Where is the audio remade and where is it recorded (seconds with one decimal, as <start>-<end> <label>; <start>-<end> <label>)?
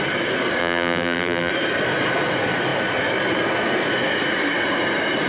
0.0-0.6 recorded; 0.6-1.5 remade; 1.5-5.3 recorded